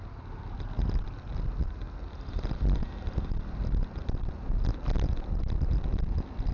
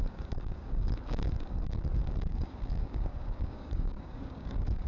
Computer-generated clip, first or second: second